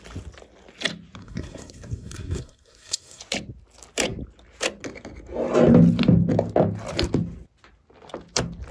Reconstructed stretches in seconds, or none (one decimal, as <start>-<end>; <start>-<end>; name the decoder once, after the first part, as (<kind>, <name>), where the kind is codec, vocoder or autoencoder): 1.2-3.2 (codec, SNAC)